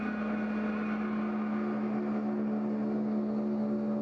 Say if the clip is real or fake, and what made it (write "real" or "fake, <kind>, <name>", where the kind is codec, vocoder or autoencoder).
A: real